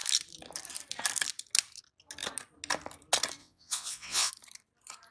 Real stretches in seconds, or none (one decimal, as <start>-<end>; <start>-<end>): 0.0-3.4; 4.3-5.1